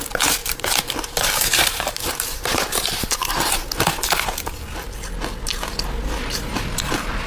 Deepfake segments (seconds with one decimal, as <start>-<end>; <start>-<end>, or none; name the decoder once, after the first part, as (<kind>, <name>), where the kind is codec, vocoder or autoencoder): 0.4-3.5 (vocoder, BigVGAN v2)